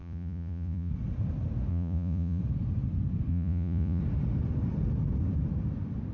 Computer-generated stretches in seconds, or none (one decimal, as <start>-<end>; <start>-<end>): 0.0-0.9; 1.7-2.4; 3.3-4.0